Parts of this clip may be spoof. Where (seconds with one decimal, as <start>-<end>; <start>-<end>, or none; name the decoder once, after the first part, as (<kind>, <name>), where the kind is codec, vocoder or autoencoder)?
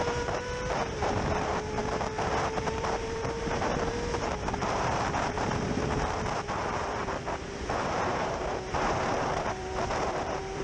0.0-10.6 (vocoder, BigVGAN v2)